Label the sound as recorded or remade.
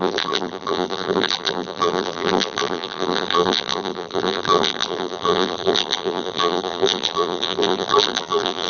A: remade